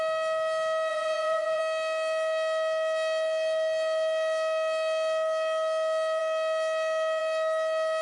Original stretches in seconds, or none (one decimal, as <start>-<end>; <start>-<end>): 0.0-0.9; 1.6-8.0